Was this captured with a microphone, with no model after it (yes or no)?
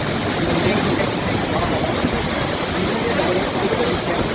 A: yes